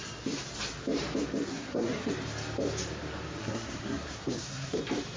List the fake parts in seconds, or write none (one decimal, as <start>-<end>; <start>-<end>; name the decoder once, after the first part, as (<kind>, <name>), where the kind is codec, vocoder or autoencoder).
1.5-2.1 (codec, SNAC); 3.4-4.8